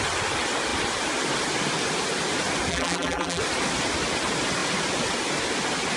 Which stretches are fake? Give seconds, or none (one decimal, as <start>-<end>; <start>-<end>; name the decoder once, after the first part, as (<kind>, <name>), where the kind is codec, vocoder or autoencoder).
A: 2.7-3.4 (vocoder, BigVGAN v2)